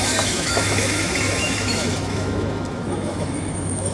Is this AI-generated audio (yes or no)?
yes